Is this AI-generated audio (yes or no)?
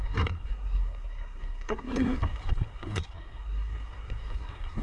yes